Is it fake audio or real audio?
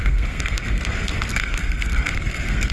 fake